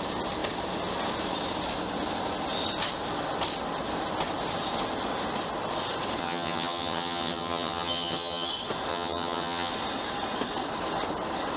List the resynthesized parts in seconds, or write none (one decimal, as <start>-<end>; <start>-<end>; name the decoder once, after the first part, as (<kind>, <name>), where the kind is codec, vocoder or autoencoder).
6.2-8.5 (vocoder, HiFi-GAN); 8.9-9.7